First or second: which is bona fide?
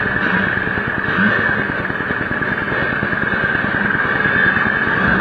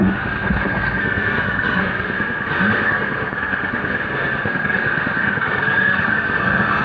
first